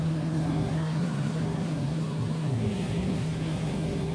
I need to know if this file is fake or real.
fake